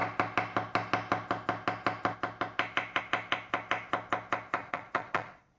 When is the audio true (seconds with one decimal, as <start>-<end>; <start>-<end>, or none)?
0.0-4.6